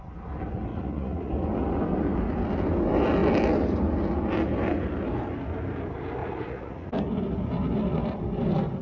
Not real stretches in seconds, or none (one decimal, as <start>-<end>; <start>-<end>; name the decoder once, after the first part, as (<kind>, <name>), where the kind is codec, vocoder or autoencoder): 0.7-1.3 (vocoder, Vocos); 6.2-6.9